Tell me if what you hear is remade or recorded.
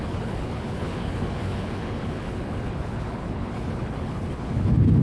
remade